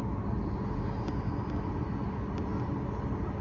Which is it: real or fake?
real